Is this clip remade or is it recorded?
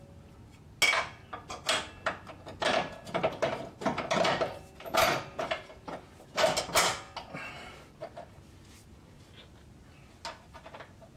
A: recorded